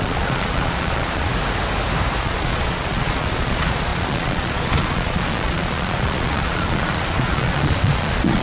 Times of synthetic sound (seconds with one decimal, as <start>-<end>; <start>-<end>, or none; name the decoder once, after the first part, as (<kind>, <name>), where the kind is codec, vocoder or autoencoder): 0.0-1.3 (vocoder, Vocos); 2.2-8.4